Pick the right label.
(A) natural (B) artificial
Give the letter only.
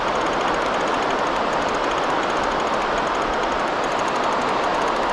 A